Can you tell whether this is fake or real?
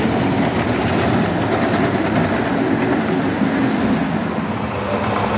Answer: real